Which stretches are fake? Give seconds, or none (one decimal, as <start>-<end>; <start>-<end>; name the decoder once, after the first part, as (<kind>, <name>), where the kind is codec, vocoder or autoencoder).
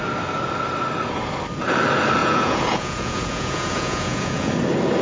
2.2-4.5 (vocoder, Vocos)